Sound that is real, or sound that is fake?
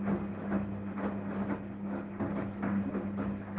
real